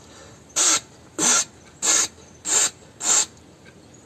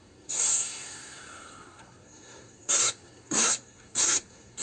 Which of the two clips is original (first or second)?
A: first